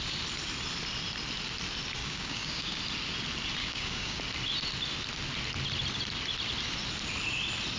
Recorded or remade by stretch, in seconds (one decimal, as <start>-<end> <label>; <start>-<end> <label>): 0.0-2.0 recorded; 2.0-2.8 remade; 2.8-3.6 recorded; 3.6-4.2 remade; 4.2-7.8 recorded